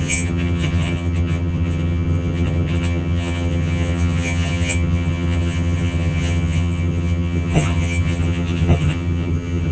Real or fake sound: fake